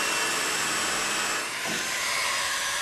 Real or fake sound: real